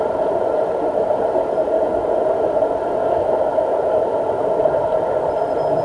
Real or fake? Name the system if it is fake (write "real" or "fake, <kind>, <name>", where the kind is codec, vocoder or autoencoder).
real